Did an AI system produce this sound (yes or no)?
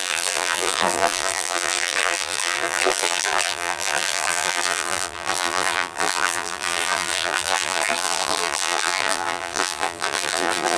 yes